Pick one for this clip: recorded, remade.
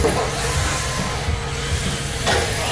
recorded